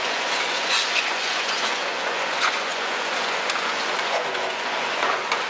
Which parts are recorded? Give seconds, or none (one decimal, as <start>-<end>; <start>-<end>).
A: none